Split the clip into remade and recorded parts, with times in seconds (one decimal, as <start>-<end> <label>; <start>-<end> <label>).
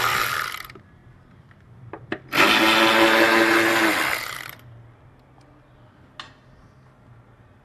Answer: 0.0-7.6 recorded